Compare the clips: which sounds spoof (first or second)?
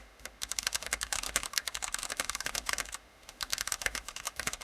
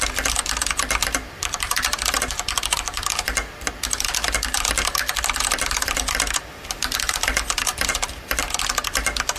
first